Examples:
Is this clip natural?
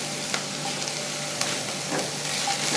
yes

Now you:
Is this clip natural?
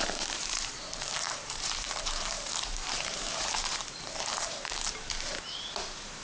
no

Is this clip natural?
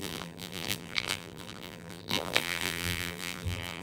no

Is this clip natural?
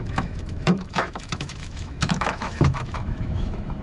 no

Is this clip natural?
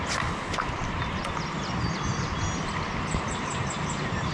yes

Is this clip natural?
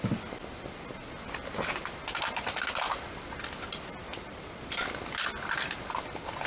yes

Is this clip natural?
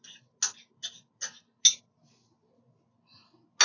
yes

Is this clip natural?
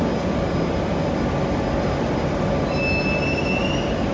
yes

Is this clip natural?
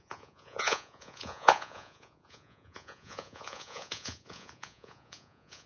no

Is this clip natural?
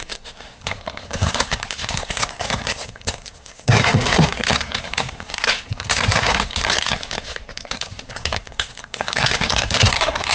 no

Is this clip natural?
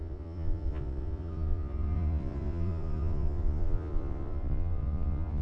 no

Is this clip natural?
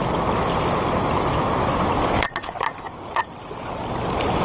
yes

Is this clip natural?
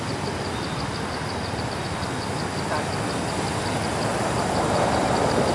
yes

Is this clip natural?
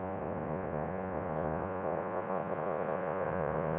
no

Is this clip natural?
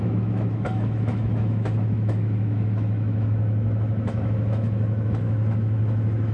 no